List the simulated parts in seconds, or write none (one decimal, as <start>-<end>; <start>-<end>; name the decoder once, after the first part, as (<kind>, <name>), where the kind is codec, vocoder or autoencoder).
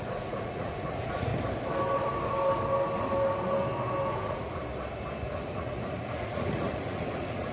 0.0-1.3 (vocoder, Vocos); 4.1-4.6; 5.3-7.5